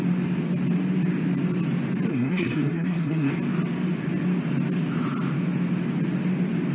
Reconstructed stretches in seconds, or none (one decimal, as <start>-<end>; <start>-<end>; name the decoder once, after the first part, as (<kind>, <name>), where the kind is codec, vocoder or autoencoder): 2.1-3.3 (codec, SNAC)